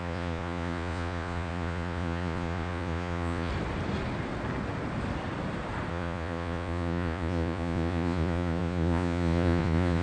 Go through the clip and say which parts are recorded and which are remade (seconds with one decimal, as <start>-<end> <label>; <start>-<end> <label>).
0.0-3.5 remade; 3.5-5.9 recorded; 5.9-10.0 remade